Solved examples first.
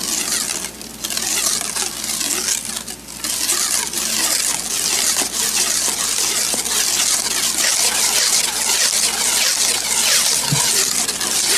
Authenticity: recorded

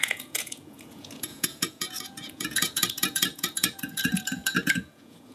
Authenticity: remade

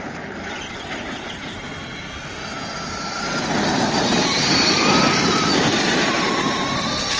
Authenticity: recorded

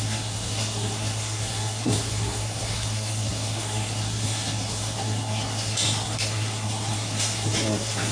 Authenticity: remade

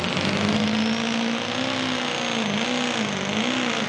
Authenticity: recorded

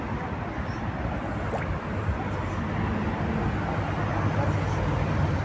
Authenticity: recorded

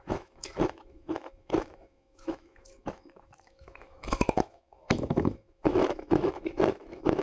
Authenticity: remade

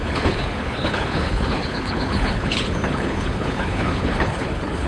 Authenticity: remade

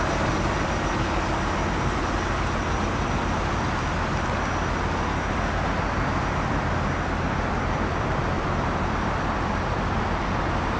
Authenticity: recorded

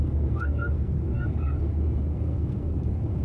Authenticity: remade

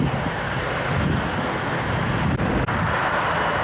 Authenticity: recorded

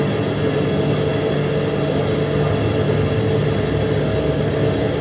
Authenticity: recorded